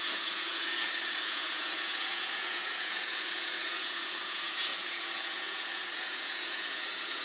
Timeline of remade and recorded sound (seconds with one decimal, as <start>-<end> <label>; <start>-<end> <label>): 0.0-7.2 remade